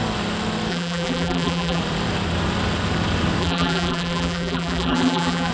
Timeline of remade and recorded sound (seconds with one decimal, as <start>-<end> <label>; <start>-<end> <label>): 0.0-0.7 recorded; 0.7-1.8 remade; 1.8-3.4 recorded; 3.4-5.5 remade